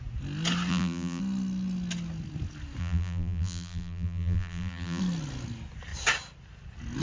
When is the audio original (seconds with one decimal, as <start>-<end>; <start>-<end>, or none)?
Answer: 0.0-0.7; 1.2-2.8; 5.0-7.0